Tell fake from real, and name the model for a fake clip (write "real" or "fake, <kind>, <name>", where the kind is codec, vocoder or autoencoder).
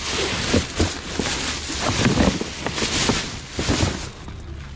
real